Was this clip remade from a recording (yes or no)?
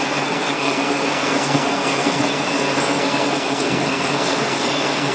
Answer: yes